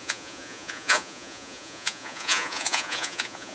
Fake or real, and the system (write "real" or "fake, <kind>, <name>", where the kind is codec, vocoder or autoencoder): fake, vocoder, Vocos